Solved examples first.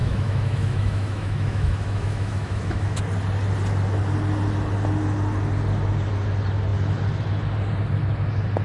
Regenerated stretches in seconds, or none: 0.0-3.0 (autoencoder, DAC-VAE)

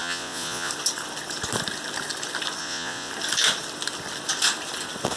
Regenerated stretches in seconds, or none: 0.0-0.7 (vocoder, Vocos); 2.6-3.1

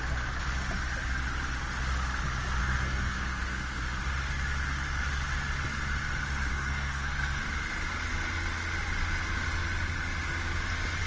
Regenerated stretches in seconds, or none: 2.6-4.0 (codec, SNAC); 6.5-7.4

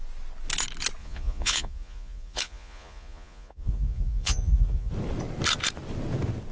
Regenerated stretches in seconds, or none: 1.0-4.9 (vocoder, Vocos)

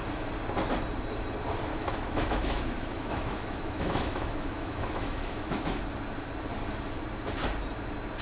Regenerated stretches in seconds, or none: 1.7-5.8 (autoencoder, DAC-VAE)